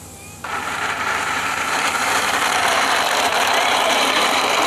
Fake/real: fake